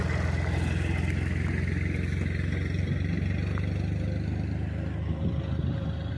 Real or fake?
real